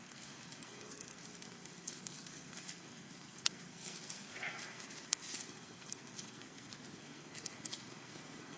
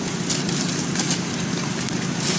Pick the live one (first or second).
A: second